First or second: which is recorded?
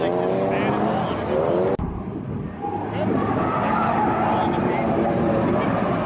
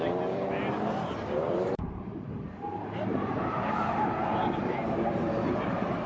first